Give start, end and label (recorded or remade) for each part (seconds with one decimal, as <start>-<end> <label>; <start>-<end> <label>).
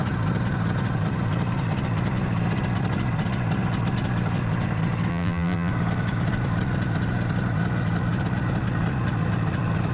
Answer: 0.0-5.1 recorded; 5.1-5.7 remade; 5.7-9.9 recorded